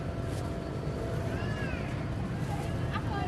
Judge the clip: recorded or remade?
recorded